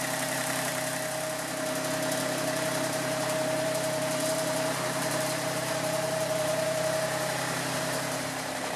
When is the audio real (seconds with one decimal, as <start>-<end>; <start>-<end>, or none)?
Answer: 0.7-2.2